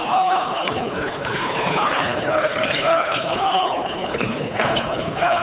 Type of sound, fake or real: fake